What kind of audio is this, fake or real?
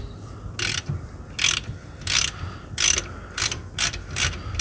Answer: real